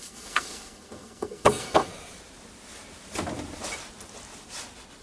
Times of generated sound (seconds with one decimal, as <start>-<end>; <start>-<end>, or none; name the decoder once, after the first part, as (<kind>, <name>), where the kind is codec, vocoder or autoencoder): 0.0-1.9 (codec, SNAC)

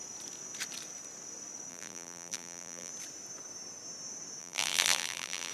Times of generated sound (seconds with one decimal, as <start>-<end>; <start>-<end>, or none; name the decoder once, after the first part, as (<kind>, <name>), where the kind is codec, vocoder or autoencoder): 1.7-2.9 (vocoder, BigVGAN v2); 4.4-5.5

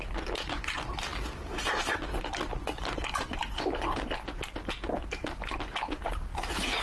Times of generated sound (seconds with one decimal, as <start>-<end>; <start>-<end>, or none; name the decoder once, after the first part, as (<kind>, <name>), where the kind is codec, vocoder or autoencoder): none